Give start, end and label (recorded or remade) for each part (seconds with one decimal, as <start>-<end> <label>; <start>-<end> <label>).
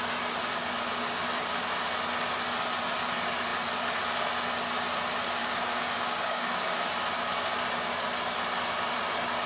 0.0-5.4 recorded; 5.4-6.8 remade; 6.8-9.5 recorded